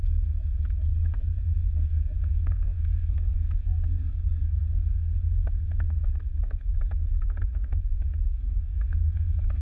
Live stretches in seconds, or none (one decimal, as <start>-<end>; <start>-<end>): none